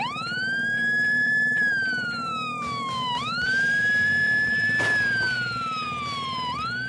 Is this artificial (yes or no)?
yes